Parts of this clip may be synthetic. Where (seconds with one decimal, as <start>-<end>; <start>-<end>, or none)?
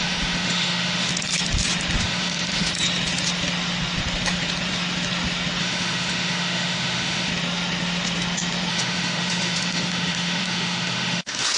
0.0-1.1; 2.0-2.7; 5.6-7.3; 8.7-11.6